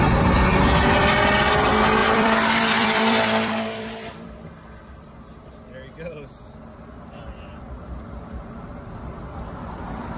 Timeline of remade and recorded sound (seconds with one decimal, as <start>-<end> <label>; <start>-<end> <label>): 0.0-2.0 recorded; 2.0-4.5 remade; 4.5-10.2 recorded